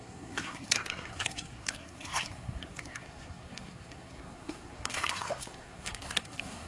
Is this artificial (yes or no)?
yes